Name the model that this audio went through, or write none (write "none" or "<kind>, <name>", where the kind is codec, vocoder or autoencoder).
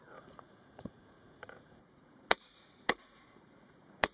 vocoder, Vocos